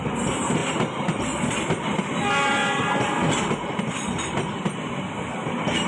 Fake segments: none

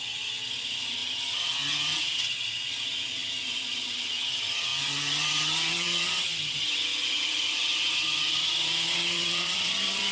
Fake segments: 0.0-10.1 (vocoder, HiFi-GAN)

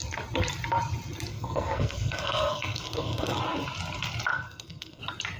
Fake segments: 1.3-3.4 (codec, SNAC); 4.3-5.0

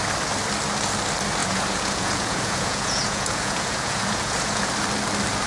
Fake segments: 1.4-4.7 (vocoder, Vocos)

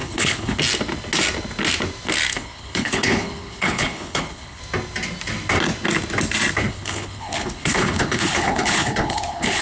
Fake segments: 0.0-0.6 (codec, HILCodec); 2.3-4.6; 6.6-9.6

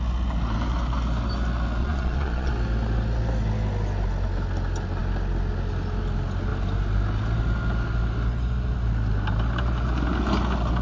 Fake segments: 1.8-2.5 (vocoder, Vocos)

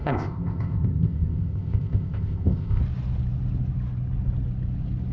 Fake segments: 0.0-2.8 (codec, ZipCodec)

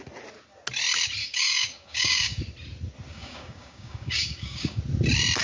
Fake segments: 1.2-2.4 (codec, DAC); 3.1-4.8